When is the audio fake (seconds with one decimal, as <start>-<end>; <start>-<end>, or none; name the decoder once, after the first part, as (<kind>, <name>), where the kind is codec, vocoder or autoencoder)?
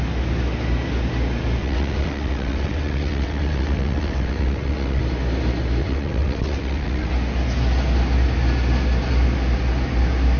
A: 1.6-5.0 (vocoder, WaveNeXt); 5.8-7.1